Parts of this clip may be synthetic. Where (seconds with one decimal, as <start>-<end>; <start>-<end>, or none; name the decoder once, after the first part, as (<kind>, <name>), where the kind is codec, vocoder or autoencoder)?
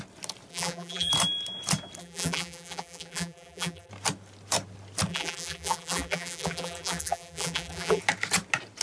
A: 0.5-1.1 (vocoder, BigVGAN v2); 2.0-3.9; 5.1-8.0